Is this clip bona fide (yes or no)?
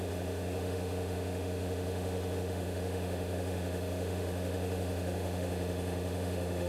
no